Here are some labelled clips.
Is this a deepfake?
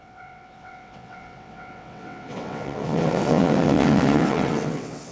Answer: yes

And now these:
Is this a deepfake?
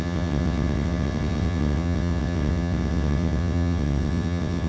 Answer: yes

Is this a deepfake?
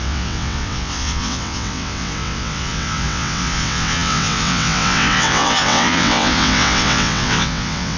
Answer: yes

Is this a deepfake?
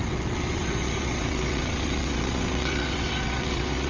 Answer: yes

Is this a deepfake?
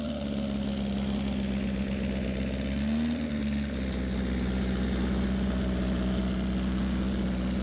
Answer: no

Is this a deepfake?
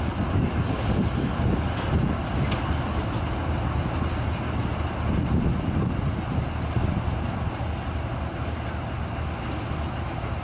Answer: no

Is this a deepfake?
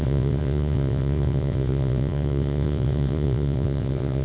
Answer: yes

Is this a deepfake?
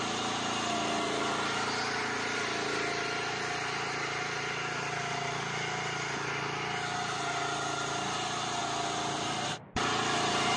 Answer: no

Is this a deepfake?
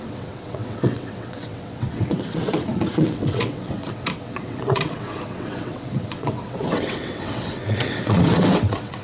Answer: yes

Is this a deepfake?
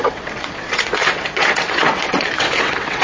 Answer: yes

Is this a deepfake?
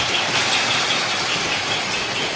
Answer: no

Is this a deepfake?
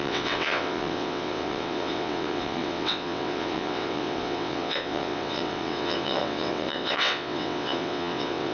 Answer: yes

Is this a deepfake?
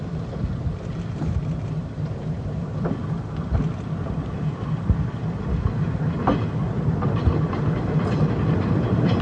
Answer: no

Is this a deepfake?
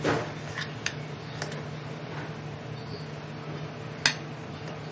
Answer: no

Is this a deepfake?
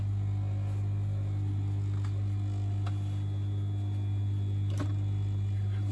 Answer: no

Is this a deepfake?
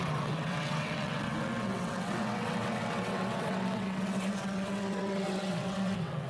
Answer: yes